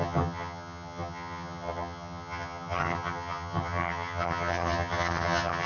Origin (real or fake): fake